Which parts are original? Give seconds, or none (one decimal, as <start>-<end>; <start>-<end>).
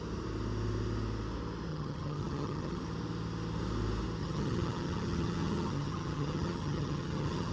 0.0-1.7; 2.8-4.2